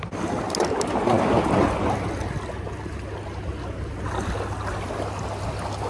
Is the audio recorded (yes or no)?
yes